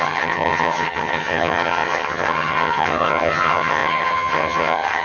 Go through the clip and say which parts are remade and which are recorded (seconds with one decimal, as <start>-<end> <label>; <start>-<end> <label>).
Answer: 0.0-5.0 remade